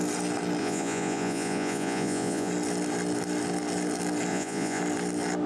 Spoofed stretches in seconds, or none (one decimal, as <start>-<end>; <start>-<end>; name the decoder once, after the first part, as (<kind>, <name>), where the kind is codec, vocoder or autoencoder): 0.6-2.5 (vocoder, Vocos); 4.3-4.8

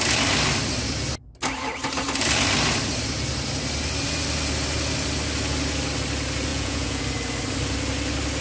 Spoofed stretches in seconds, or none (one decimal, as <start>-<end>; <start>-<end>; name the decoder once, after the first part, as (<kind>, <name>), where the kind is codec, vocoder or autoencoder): 6.5-7.0 (vocoder, Vocos)

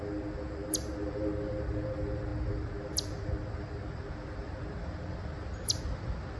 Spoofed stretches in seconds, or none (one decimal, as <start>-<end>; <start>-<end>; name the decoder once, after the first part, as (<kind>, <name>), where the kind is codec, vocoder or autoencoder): none

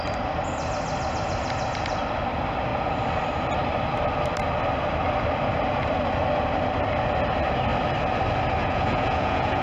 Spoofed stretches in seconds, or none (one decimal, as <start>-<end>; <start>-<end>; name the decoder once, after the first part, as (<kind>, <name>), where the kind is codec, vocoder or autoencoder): 8.6-9.6 (vocoder, Vocos)

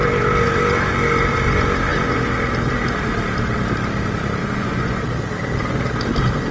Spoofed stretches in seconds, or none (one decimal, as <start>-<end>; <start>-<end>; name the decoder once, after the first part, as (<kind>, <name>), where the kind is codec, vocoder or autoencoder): 4.4-5.0 (vocoder, Vocos)

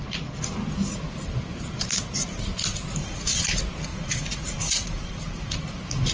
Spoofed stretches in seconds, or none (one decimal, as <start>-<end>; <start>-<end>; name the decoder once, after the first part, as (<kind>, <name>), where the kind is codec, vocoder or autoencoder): 3.0-3.5 (vocoder, Vocos); 3.9-5.5

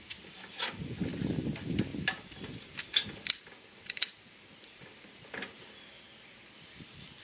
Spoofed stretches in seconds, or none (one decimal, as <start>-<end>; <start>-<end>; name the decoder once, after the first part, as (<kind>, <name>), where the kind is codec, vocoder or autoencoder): none